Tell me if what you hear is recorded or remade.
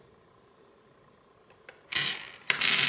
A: recorded